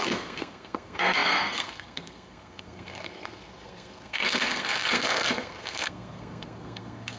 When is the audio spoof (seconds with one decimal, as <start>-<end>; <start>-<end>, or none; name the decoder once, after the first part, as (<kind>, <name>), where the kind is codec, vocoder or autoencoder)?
0.0-7.2 (codec, SNAC)